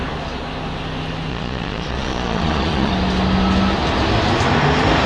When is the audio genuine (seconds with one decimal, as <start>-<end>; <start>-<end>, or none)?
0.0-1.3; 2.9-5.1